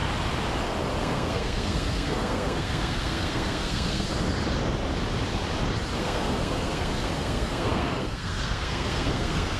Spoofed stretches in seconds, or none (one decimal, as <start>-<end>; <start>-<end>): 1.0-4.1; 6.0-9.6